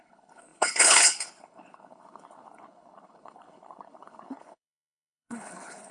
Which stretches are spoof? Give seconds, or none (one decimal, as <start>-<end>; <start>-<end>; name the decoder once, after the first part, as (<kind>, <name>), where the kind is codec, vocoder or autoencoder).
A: 0.0-5.9 (codec, HILCodec)